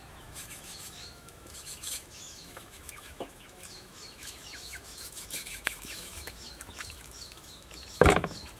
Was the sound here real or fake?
fake